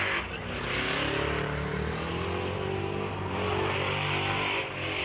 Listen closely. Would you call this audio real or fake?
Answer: real